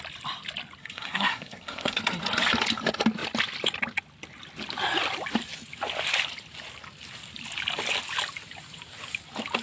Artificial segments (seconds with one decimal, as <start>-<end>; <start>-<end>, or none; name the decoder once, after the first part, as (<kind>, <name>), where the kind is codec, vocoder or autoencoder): 0.8-2.0 (codec, SNAC)